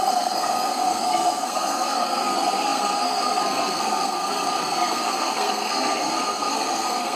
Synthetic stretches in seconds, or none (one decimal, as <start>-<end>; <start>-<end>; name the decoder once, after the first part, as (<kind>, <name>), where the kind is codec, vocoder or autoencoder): 0.0-7.2 (codec, SNAC)